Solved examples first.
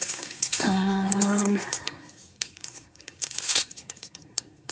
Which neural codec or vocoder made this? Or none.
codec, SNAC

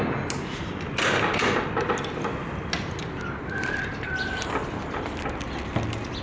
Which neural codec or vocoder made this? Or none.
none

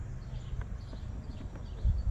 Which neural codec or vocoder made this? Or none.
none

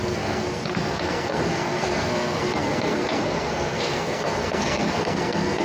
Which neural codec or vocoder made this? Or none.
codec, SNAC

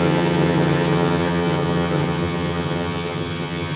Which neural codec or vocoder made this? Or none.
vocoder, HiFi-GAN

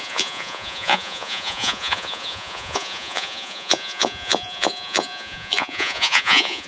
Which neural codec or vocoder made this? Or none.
vocoder, Vocos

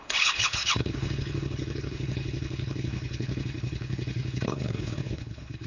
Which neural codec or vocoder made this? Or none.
codec, HILCodec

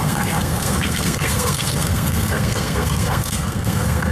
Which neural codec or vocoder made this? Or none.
codec, SNAC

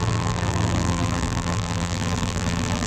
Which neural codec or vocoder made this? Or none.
vocoder, BigVGAN v2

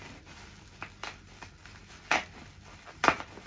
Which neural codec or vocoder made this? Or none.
none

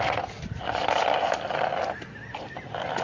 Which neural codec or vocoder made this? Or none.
none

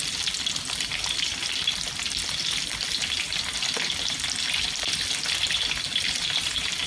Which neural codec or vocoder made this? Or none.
none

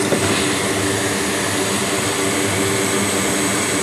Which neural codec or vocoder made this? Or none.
none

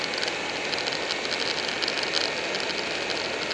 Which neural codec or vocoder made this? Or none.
none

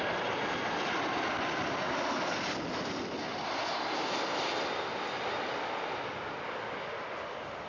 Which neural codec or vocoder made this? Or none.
none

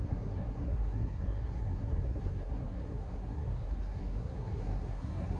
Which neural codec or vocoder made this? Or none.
codec, SNAC